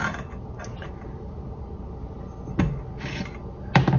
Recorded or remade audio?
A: recorded